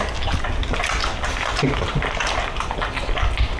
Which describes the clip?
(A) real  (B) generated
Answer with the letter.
A